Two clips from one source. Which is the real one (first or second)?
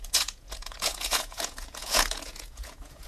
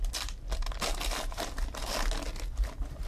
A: second